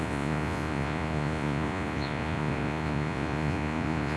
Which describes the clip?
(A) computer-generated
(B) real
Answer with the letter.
A